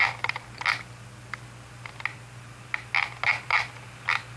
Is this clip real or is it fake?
real